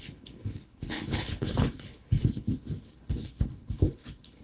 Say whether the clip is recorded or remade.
remade